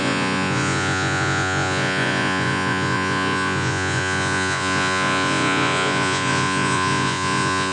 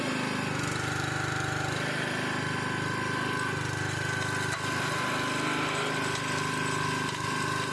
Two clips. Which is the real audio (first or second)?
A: second